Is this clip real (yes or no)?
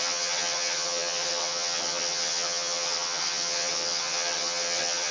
no